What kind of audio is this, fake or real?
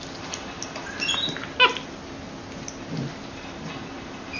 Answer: real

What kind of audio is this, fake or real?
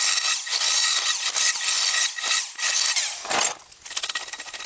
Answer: real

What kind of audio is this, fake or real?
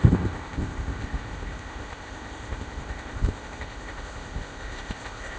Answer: fake